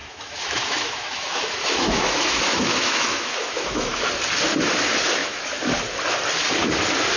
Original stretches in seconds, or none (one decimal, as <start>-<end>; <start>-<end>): 4.1-5.2; 5.8-7.2